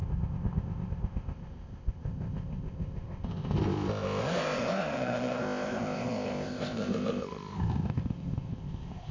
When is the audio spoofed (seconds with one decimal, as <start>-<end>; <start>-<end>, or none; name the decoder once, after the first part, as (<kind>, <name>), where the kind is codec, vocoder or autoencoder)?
0.0-9.1 (codec, ZipCodec)